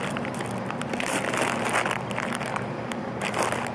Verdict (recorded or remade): recorded